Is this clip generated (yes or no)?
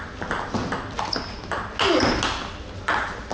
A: no